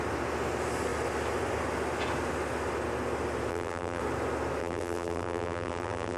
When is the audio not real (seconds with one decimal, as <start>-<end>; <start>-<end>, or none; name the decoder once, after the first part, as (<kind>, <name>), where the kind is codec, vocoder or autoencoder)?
3.5-4.0 (vocoder, BigVGAN v2); 4.6-6.2